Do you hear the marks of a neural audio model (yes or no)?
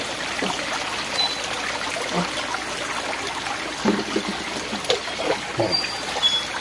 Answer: no